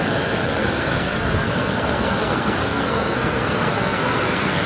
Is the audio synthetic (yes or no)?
yes